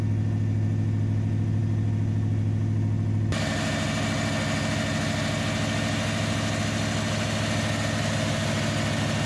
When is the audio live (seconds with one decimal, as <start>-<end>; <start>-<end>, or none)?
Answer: 0.0-9.3